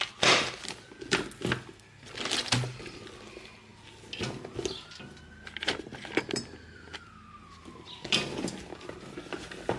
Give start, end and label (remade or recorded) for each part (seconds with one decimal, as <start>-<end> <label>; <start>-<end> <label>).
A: 0.0-9.8 recorded